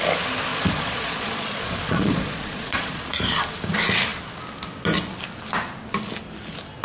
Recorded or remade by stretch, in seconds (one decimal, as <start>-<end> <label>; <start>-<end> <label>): 0.0-0.5 recorded; 0.5-3.0 remade; 3.0-6.8 recorded